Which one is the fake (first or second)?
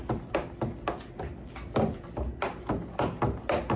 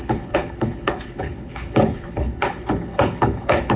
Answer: second